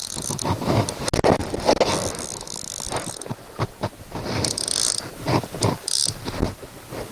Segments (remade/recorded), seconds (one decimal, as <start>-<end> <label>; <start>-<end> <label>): 0.0-7.1 recorded